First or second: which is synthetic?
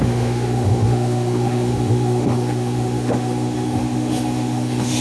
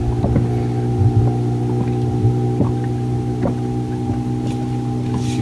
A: first